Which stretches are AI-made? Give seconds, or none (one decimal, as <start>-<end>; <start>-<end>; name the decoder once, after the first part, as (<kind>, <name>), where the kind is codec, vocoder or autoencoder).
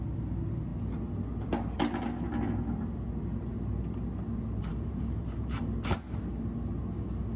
4.7-5.6 (vocoder, BigVGAN v2)